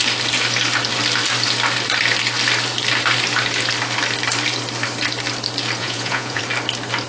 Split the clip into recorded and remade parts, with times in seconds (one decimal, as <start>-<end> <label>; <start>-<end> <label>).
0.0-5.8 recorded; 5.8-6.4 remade; 6.4-7.1 recorded